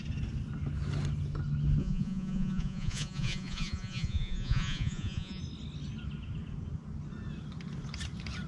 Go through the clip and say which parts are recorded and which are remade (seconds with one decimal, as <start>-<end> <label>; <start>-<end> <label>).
0.0-1.8 recorded; 1.8-5.4 remade; 5.4-8.5 recorded